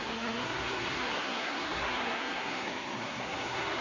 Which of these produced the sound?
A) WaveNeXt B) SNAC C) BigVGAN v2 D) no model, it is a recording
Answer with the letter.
B